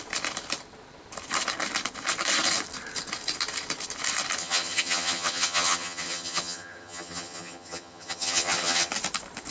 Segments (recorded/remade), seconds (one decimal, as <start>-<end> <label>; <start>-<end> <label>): 0.0-4.4 recorded; 4.4-8.9 remade; 8.9-9.5 recorded